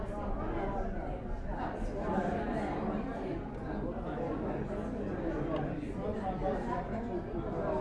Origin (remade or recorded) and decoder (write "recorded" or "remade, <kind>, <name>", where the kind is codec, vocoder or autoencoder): recorded